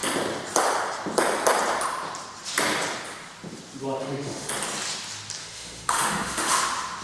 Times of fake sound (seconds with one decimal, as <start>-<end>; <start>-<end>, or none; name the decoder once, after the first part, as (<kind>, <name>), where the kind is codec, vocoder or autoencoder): 4.0-4.5 (autoencoder, DAC-VAE); 5.4-6.6